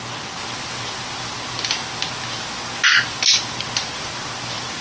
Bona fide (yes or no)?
yes